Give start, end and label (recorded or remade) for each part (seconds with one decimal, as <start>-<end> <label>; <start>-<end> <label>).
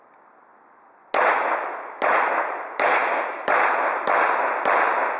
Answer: 0.0-5.2 recorded